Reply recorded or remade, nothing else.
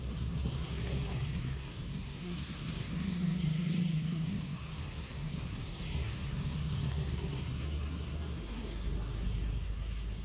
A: remade